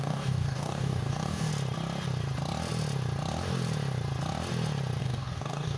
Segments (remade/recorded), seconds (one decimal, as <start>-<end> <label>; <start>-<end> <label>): 0.0-1.5 remade; 1.5-5.0 recorded; 5.0-5.8 remade